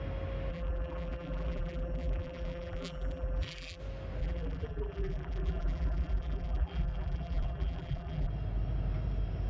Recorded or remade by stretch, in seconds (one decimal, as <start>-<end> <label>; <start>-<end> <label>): 0.0-0.5 recorded; 0.5-3.8 remade; 3.8-4.2 recorded; 4.2-8.3 remade; 8.3-9.5 recorded